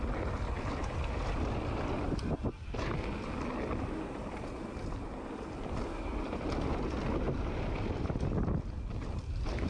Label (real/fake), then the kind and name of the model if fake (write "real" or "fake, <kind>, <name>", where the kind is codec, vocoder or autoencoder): real